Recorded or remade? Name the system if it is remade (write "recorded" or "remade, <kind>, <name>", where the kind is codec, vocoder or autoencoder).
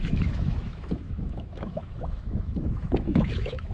remade, autoencoder, DAC-VAE